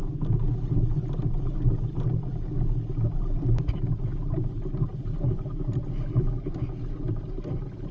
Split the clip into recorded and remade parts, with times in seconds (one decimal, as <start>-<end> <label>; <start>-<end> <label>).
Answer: 0.0-7.9 recorded